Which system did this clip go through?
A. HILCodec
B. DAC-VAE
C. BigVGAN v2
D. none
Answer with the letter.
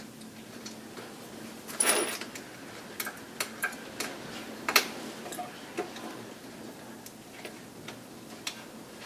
D